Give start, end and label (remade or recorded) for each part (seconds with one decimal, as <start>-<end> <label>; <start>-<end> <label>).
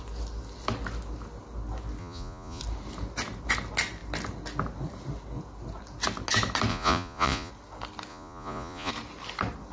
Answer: 0.0-2.0 recorded; 2.0-2.6 remade; 2.6-6.7 recorded; 6.7-7.5 remade; 7.5-8.1 recorded; 8.1-8.9 remade; 8.9-9.7 recorded